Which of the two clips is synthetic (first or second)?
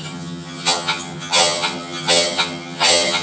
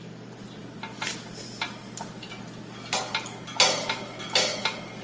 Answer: first